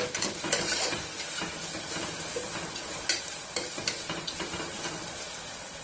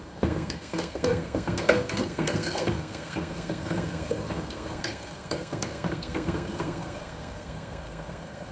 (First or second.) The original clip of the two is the first